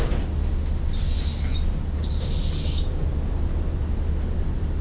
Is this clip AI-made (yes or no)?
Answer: no